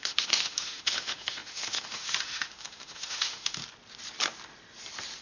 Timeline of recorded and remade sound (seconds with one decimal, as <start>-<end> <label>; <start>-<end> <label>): 0.0-3.6 remade; 3.6-5.2 recorded